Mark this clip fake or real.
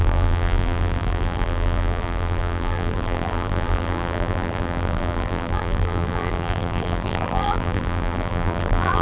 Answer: fake